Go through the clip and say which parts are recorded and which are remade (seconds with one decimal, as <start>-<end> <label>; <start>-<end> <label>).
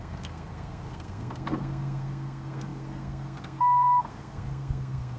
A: 0.0-5.2 remade